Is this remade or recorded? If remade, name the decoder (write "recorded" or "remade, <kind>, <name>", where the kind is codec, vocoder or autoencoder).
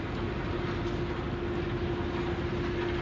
recorded